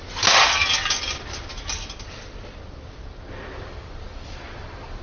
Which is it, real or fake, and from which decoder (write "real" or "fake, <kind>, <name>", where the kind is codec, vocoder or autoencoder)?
real